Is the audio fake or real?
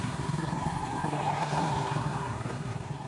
fake